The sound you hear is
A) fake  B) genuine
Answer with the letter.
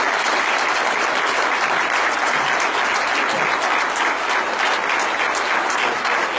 B